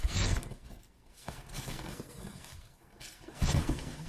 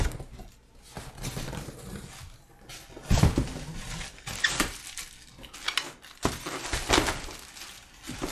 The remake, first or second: first